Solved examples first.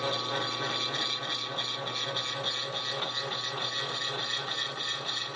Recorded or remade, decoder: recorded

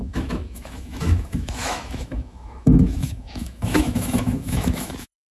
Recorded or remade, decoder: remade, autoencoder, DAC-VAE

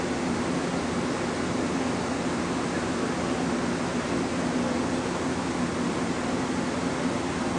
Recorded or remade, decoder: recorded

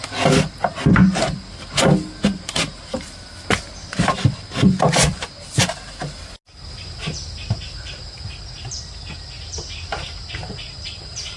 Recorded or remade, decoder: recorded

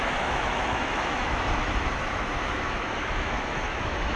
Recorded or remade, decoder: remade, autoencoder, DAC-VAE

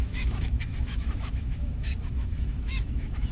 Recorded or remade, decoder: remade, autoencoder, DAC-VAE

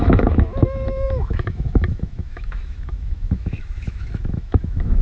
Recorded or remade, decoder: remade, autoencoder, DAC-VAE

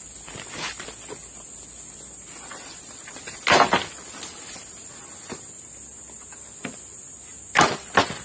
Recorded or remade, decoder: recorded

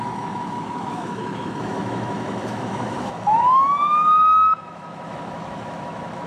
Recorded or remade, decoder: remade, autoencoder, DAC-VAE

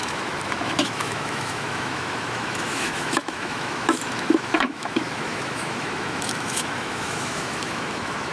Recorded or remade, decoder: remade, autoencoder, DAC-VAE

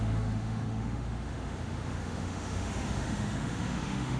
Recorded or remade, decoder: remade, autoencoder, DAC-VAE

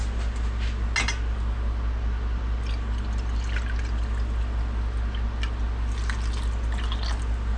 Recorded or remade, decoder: recorded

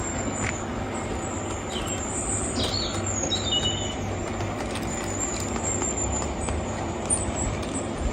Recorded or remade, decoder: recorded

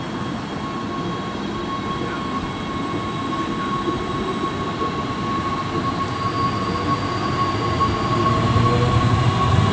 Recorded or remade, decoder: recorded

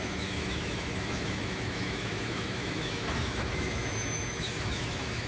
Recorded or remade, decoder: remade, autoencoder, DAC-VAE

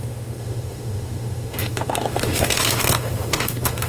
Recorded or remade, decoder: remade, autoencoder, DAC-VAE